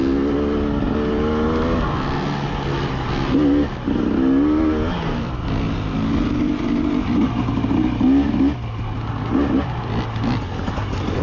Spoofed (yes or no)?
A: no